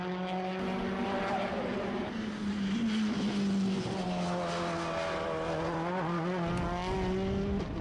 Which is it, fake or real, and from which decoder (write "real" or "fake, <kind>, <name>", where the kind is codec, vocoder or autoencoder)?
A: real